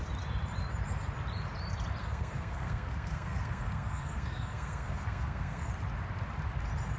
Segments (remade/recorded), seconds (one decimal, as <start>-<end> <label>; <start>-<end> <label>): 0.0-2.0 recorded; 2.0-5.7 remade; 5.7-7.0 recorded

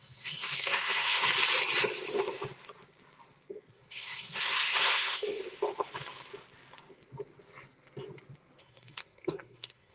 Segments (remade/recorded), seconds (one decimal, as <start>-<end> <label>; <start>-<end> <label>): 0.0-1.3 remade; 1.3-3.7 recorded; 3.7-5.4 remade; 5.4-8.6 recorded; 8.6-9.9 remade

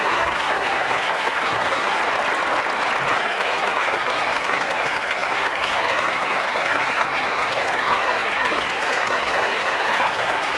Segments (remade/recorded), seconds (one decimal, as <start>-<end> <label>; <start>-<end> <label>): 0.0-2.0 remade; 2.0-3.1 recorded; 3.1-10.6 remade

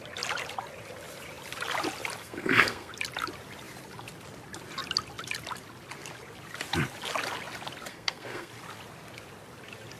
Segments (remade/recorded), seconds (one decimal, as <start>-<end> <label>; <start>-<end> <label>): 0.0-2.2 recorded; 2.2-2.9 remade; 2.9-7.9 recorded; 7.9-8.5 remade; 8.5-10.0 recorded

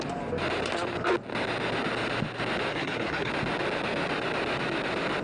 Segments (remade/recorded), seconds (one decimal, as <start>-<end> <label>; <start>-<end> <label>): 0.0-2.7 recorded; 2.7-3.3 remade; 3.3-5.2 recorded

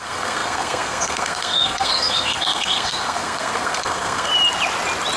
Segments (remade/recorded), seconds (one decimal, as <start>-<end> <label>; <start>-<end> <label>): 0.0-4.3 remade; 4.3-5.2 recorded

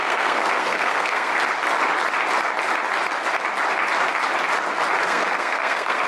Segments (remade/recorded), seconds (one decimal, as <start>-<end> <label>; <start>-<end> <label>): 0.0-1.3 remade; 1.3-5.0 recorded; 5.0-6.1 remade